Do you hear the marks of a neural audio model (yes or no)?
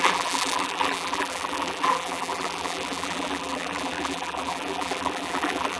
yes